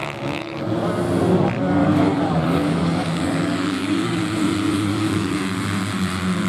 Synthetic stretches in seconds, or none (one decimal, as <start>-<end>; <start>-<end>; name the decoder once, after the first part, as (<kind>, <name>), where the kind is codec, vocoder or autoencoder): 0.0-0.6 (codec, DAC); 1.8-4.2; 4.7-5.3